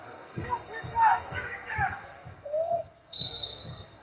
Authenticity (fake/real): fake